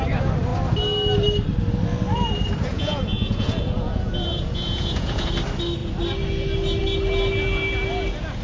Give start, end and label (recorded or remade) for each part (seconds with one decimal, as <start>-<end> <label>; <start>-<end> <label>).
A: 0.0-2.7 recorded; 2.7-5.3 remade; 5.3-8.4 recorded